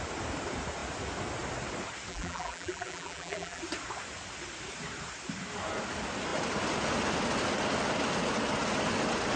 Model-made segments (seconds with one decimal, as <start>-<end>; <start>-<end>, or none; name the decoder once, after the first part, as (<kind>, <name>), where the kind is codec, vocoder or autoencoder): 2.1-3.6 (vocoder, BigVGAN v2)